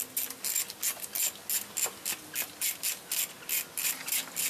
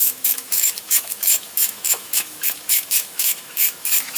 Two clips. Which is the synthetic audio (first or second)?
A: second